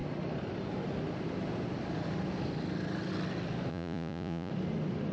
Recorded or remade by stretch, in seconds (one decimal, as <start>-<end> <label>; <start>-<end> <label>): 0.0-3.7 recorded; 3.7-4.5 remade; 4.5-5.1 recorded